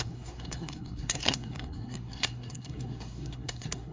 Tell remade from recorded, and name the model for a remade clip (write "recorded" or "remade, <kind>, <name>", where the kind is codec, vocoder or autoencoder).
remade, codec, SNAC